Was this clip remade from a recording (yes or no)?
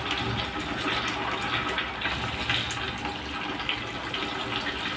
no